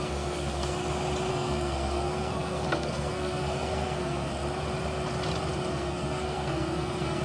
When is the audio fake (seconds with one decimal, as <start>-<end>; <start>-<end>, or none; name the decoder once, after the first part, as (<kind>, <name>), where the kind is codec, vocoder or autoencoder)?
0.0-0.8 (codec, SNAC); 1.3-4.3; 5.7-7.2